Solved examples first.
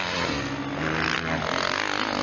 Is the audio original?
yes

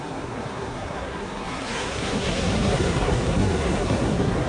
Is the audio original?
no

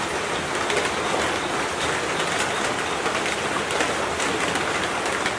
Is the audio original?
yes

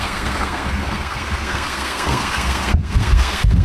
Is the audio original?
no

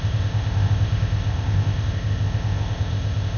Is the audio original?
no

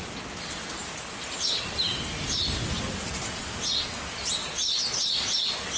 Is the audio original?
yes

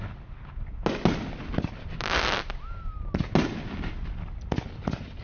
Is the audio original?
yes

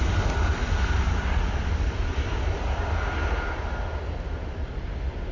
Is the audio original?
yes